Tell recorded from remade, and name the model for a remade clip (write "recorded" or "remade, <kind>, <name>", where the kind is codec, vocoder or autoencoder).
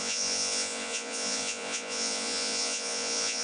remade, vocoder, Vocos